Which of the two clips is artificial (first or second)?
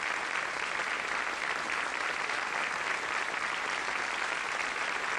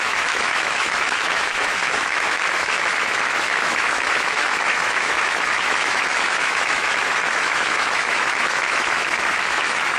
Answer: second